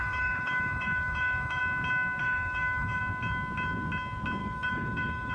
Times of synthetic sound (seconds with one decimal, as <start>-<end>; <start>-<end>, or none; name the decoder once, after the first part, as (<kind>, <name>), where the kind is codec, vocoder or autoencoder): 0.0-1.6 (autoencoder, DAC-VAE); 2.2-3.0; 4.4-5.3